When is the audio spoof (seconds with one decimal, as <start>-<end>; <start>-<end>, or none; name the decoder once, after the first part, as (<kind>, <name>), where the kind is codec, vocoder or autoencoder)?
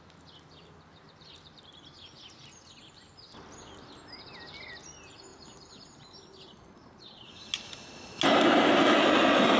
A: none